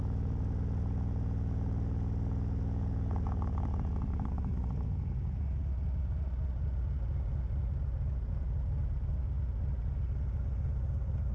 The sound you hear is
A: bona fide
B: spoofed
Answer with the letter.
A